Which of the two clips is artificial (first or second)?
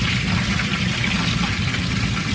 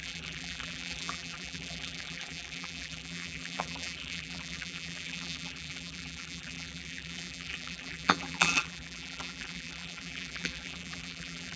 second